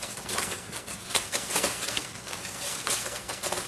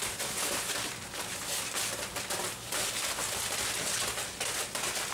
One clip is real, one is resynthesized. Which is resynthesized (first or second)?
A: first